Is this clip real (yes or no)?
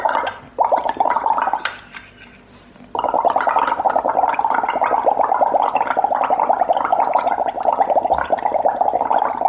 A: yes